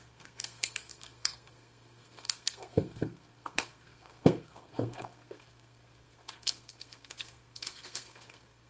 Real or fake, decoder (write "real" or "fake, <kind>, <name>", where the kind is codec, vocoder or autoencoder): fake, codec, SNAC